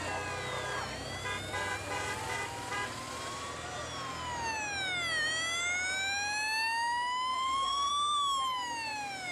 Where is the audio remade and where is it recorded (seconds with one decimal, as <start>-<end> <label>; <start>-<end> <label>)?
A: 0.0-7.3 recorded; 7.3-7.9 remade; 7.9-9.3 recorded